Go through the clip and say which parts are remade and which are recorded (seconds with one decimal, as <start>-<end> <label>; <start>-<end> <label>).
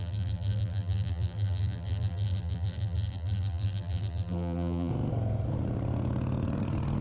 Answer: 0.0-4.9 remade; 4.9-7.0 recorded